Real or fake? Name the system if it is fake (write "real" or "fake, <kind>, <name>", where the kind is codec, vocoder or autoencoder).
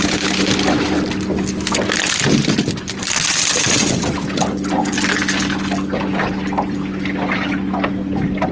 real